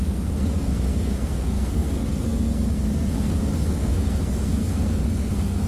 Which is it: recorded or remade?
remade